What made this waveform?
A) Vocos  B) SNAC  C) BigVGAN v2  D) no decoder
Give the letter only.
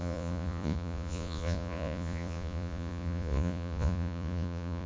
A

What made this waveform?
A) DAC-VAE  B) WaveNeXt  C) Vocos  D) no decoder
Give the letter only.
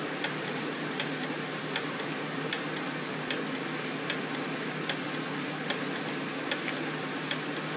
D